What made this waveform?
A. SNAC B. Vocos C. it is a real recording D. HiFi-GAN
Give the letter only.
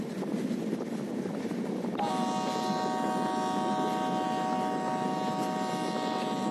C